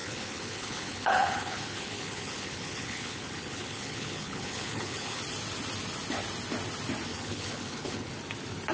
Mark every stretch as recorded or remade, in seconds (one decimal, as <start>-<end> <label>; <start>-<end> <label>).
0.0-5.2 remade; 5.2-7.1 recorded; 7.1-8.1 remade; 8.1-8.7 recorded